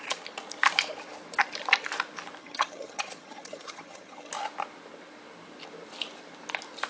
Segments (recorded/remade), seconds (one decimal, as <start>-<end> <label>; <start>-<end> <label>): 0.0-2.4 recorded; 2.4-4.3 remade; 4.3-6.9 recorded